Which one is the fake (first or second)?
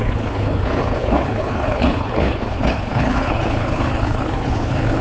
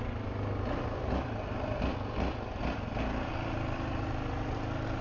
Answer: first